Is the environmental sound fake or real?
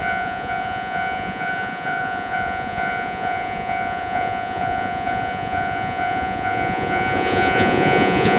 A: fake